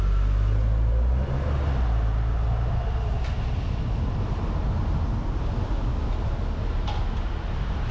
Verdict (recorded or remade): recorded